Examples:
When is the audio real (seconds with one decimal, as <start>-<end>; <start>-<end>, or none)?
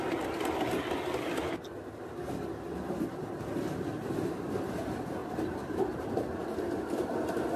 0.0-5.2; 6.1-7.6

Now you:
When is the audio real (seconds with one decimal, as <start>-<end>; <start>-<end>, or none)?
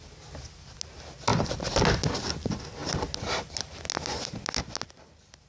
0.0-1.3; 2.0-5.5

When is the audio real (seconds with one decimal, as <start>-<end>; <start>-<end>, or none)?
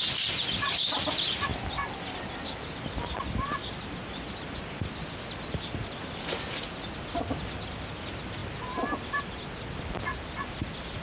0.0-11.0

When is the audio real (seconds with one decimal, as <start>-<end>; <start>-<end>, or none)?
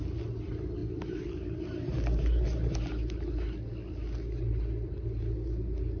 0.0-6.0